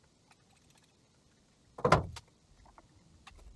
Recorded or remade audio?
recorded